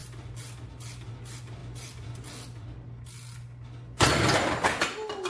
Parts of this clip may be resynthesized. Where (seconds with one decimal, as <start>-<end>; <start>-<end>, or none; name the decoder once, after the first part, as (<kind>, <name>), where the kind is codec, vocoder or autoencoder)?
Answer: none